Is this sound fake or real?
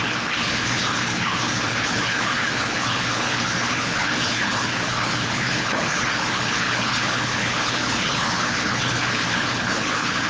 fake